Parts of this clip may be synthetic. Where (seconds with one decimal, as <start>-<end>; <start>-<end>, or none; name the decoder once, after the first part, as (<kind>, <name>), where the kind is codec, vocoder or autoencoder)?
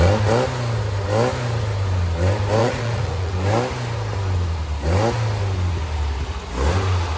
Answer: 2.6-3.3 (vocoder, Vocos)